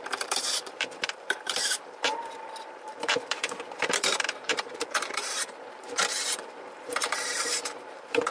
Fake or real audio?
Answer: fake